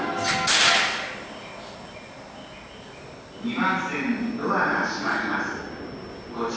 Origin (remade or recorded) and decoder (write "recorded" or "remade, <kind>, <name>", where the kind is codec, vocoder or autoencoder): recorded